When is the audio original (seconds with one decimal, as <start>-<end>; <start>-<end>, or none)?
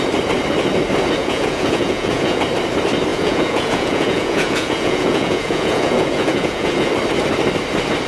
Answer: 0.0-1.2; 2.4-3.1; 6.9-8.1